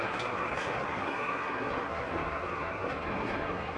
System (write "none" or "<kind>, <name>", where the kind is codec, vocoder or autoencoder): codec, SNAC